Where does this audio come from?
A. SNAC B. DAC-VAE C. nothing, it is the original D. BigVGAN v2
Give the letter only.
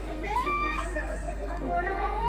A